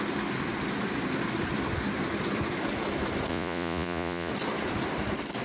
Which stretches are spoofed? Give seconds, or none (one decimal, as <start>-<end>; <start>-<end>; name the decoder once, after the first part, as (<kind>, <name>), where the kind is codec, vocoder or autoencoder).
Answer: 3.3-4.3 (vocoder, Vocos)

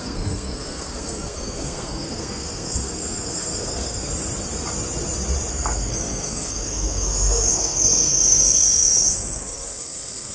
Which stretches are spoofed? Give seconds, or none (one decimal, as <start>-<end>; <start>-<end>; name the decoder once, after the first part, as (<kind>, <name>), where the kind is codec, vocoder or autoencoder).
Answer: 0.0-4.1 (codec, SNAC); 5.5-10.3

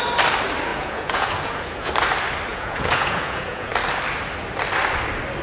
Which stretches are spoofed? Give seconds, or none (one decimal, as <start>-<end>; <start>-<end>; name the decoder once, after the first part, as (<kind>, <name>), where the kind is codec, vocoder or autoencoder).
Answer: 0.7-1.9 (vocoder, Vocos); 2.5-3.7

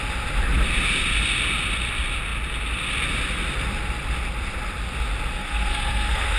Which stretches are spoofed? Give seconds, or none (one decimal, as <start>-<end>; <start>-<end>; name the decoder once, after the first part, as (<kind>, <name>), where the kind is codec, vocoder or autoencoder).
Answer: 5.4-6.4 (codec, SNAC)